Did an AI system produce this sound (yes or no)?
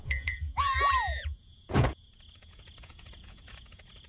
yes